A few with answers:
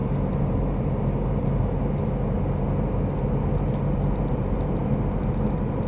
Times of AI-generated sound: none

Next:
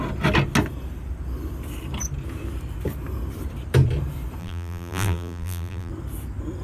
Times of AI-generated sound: 4.4-5.9 (vocoder, BigVGAN v2)

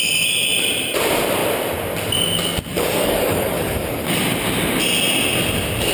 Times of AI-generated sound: 2.7-4.2 (codec, DAC)

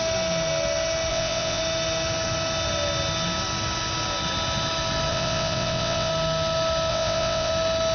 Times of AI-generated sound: 1.1-1.6 (vocoder, WaveNeXt); 5.1-6.1; 6.9-7.5

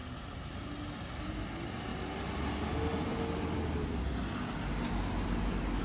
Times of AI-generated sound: none

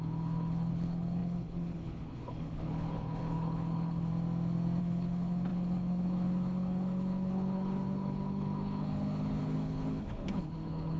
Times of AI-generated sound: 0.0-4.1 (codec, HILCodec); 4.8-11.0

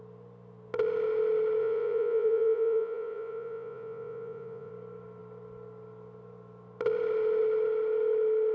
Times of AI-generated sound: 1.6-4.7 (vocoder, Vocos)